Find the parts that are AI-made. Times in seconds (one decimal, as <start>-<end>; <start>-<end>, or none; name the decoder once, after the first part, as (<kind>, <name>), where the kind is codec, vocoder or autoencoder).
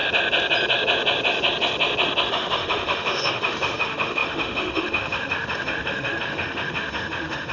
2.3-7.5 (autoencoder, DAC-VAE)